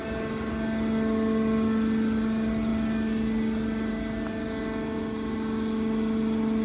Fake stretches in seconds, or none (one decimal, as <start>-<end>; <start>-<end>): none